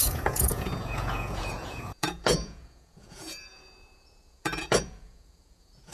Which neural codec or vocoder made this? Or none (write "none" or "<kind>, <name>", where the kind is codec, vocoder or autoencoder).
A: vocoder, Vocos